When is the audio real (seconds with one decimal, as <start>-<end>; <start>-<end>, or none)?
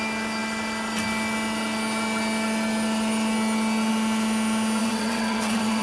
0.0-4.8